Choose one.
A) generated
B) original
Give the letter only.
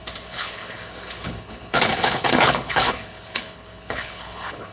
A